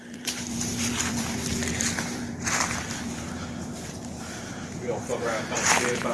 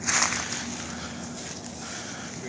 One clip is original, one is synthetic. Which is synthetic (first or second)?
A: first